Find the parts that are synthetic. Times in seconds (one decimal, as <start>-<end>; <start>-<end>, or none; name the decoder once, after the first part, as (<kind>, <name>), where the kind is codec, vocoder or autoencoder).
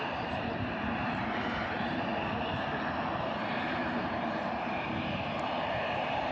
0.0-2.1 (vocoder, BigVGAN v2); 3.4-6.3